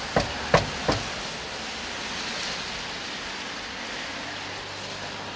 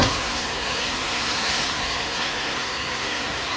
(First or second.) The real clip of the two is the first